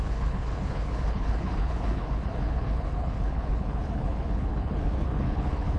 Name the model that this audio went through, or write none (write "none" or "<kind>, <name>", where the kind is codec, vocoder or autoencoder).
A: codec, HILCodec